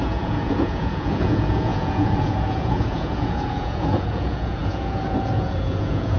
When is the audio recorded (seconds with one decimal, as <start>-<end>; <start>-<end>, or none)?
none